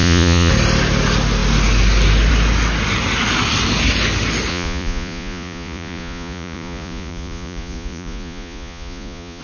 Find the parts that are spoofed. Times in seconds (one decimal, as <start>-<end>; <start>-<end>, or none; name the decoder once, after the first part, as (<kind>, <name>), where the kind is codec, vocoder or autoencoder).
0.0-0.5 (vocoder, Vocos); 4.5-9.4